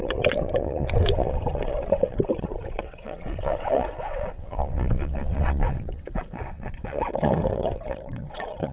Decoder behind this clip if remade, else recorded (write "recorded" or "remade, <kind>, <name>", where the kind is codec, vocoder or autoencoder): remade, vocoder, WaveNeXt